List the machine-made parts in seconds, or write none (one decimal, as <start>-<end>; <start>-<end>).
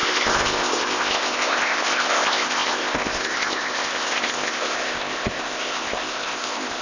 0.0-6.8